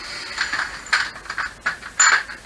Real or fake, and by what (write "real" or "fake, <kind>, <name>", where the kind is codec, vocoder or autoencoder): real